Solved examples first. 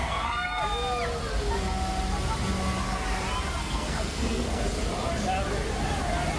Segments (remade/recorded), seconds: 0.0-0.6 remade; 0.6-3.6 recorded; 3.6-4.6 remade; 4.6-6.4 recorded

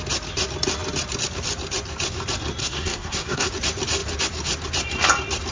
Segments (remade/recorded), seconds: 0.0-2.6 recorded; 2.6-3.5 remade; 3.5-5.5 recorded

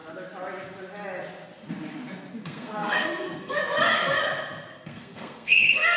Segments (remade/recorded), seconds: 0.0-2.4 recorded; 2.4-3.6 remade; 3.6-4.7 recorded; 4.7-6.0 remade